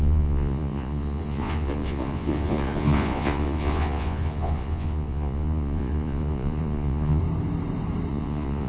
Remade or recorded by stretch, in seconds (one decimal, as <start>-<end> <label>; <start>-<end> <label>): 0.0-7.2 remade; 7.2-8.1 recorded; 8.1-8.7 remade